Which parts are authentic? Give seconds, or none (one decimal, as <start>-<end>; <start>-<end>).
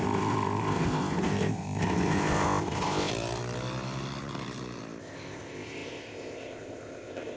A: 3.1-5.0